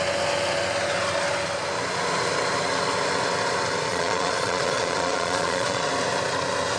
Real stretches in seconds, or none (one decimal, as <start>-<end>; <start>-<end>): 0.0-3.9; 5.9-6.8